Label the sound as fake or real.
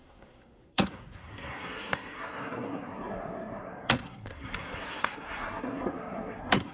fake